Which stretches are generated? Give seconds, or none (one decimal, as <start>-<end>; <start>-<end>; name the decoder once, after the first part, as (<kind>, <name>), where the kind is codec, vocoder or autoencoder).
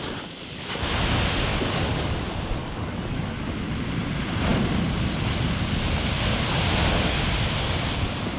1.5-2.2 (codec, DAC); 2.6-3.5